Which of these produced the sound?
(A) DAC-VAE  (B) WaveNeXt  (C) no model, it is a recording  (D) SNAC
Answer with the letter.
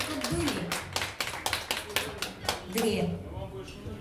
C